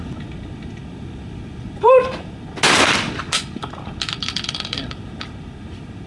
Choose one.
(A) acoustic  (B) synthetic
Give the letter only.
A